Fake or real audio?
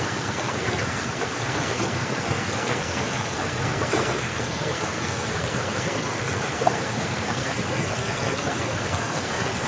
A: fake